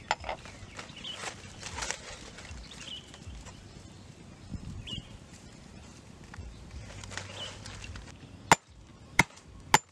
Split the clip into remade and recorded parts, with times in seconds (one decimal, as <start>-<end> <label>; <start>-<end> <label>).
0.0-4.5 recorded; 4.5-7.2 remade; 7.2-8.9 recorded; 8.9-9.5 remade; 9.5-9.9 recorded